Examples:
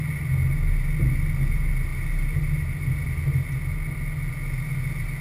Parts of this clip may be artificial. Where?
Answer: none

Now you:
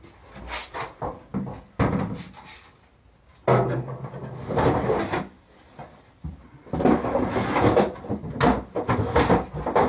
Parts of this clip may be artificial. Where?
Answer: none

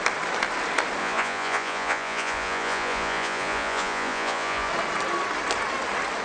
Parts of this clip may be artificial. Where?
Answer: 1.0-4.7 (vocoder, Vocos)

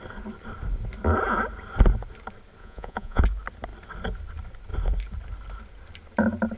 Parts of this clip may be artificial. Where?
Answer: 2.6-3.2 (vocoder, Vocos)